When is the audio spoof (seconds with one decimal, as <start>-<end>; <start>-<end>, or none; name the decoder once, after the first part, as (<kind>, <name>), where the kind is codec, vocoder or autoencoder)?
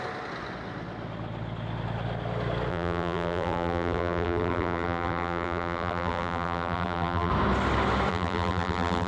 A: 2.7-7.3 (vocoder, BigVGAN v2); 8.1-9.1